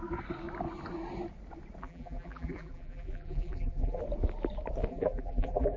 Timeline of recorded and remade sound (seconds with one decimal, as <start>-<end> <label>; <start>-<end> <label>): 0.0-1.8 recorded; 1.8-4.0 remade; 4.0-4.9 recorded; 4.9-5.8 remade